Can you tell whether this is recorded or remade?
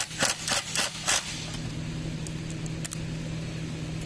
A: recorded